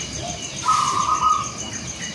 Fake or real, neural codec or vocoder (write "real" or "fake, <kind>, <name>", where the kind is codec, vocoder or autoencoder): real